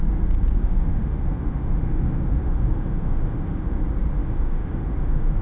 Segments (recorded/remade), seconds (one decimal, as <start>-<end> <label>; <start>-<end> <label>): 0.0-0.6 recorded; 0.6-3.8 remade; 3.8-4.2 recorded; 4.2-5.4 remade